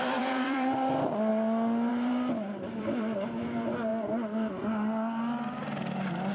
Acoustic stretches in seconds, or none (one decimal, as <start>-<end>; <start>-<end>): 1.3-1.9; 3.9-6.3